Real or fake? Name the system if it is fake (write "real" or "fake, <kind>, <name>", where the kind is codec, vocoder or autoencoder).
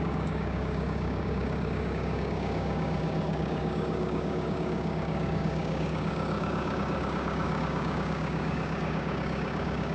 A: fake, codec, DAC